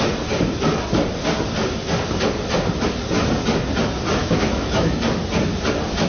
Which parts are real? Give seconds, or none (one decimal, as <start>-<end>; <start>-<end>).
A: 0.0-4.2; 5.0-6.1